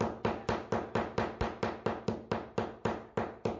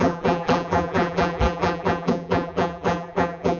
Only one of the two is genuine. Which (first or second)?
first